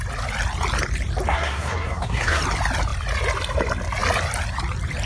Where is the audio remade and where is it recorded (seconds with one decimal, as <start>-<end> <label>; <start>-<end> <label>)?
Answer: 0.0-1.3 recorded; 1.3-2.4 remade; 2.4-5.1 recorded